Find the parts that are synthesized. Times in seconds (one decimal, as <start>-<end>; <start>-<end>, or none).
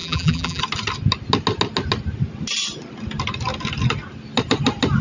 0.0-0.6